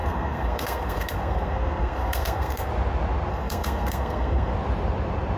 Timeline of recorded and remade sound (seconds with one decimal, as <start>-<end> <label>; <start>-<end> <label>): 0.0-2.7 remade; 2.7-3.3 recorded; 3.3-4.5 remade; 4.5-5.4 recorded

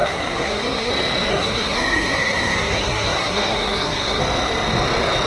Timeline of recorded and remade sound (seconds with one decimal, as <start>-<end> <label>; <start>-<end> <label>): 0.0-0.9 remade; 0.9-1.3 recorded; 1.3-4.2 remade; 4.2-5.3 recorded

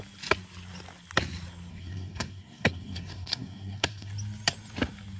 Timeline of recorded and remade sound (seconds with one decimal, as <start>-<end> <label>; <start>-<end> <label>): 0.0-1.7 recorded; 1.7-4.1 remade; 4.1-5.2 recorded

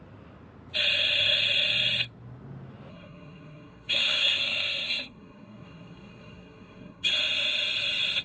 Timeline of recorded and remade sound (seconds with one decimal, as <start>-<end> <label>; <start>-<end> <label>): 0.0-2.9 recorded; 2.9-7.1 remade; 7.1-8.2 recorded

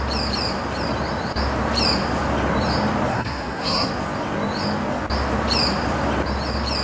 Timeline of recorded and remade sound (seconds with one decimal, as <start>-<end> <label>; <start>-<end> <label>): 0.0-3.1 recorded; 3.1-3.9 remade; 3.9-6.8 recorded

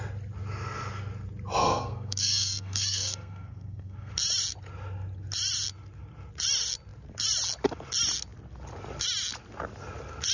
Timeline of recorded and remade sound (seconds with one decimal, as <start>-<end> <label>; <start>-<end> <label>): 0.0-1.6 recorded; 1.6-4.1 remade; 4.1-10.3 recorded

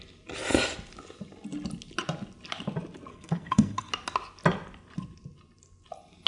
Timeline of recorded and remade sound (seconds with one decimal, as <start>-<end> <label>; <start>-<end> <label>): 0.0-3.1 recorded; 3.1-3.9 remade; 3.9-6.3 recorded